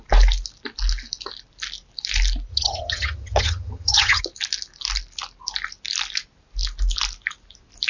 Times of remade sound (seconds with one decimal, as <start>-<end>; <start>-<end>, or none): 2.5-4.2